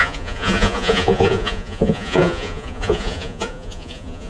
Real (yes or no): no